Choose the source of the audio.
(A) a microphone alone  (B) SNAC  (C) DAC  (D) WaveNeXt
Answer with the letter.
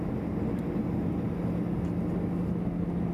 A